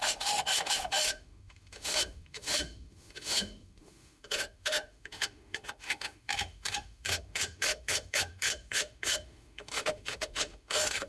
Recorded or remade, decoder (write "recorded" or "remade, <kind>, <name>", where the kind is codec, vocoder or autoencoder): remade, autoencoder, DAC-VAE